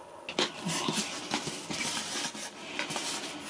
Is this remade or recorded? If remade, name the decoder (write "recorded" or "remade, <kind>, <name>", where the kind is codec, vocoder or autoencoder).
recorded